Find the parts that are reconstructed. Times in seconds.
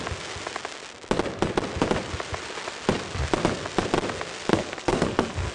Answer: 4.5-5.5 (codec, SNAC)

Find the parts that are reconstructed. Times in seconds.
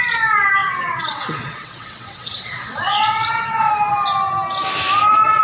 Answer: 0.6-3.7 (vocoder, WaveNeXt)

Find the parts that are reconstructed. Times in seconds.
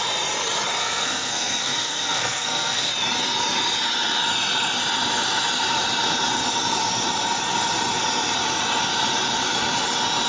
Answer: 0.8-2.9 (codec, SNAC)